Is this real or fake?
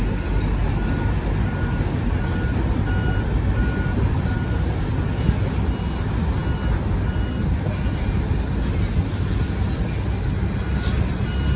real